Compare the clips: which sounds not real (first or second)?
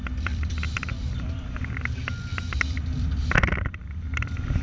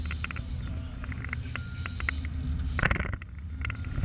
first